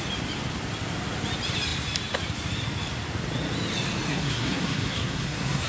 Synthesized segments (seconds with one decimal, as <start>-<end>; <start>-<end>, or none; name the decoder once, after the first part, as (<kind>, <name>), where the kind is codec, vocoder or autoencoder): 4.1-5.7 (codec, SNAC)